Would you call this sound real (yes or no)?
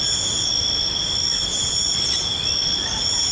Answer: yes